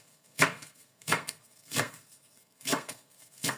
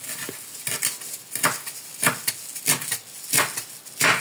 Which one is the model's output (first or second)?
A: first